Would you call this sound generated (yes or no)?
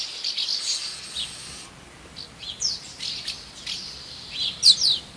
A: no